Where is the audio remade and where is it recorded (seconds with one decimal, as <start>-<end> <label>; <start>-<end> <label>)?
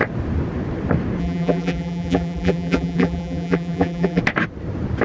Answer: 0.0-1.2 recorded; 1.2-4.2 remade; 4.2-5.0 recorded